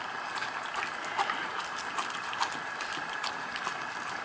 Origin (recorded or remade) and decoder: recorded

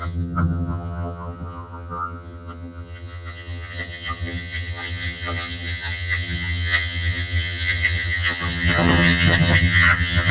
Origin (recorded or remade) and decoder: remade, vocoder, HiFi-GAN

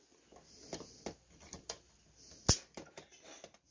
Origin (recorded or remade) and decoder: recorded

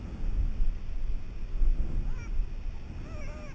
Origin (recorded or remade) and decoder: recorded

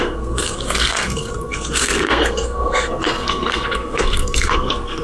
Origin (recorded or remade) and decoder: remade, codec, SNAC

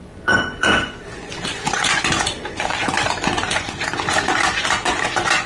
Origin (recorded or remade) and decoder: remade, vocoder, Vocos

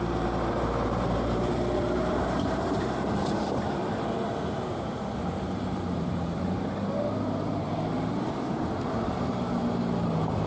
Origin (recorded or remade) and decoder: remade, vocoder, BigVGAN v2